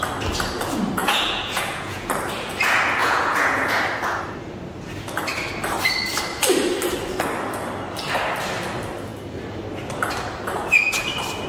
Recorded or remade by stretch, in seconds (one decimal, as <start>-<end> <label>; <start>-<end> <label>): 0.0-1.0 recorded; 1.0-2.1 remade; 2.1-3.0 recorded; 3.0-3.7 remade; 3.7-11.5 recorded